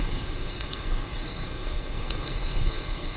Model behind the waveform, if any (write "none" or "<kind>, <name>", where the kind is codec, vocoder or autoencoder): codec, SNAC